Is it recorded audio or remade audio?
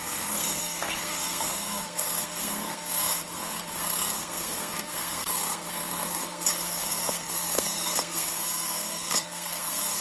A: remade